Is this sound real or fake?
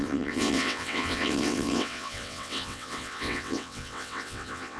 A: fake